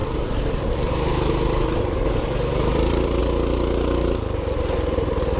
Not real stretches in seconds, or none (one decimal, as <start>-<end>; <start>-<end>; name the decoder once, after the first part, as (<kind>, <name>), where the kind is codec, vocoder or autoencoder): 0.0-3.2 (vocoder, BigVGAN v2)